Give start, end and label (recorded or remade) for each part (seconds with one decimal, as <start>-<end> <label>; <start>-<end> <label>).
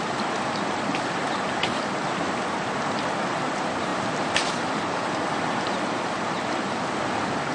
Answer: 0.0-3.9 recorded; 3.9-4.5 remade; 4.5-7.5 recorded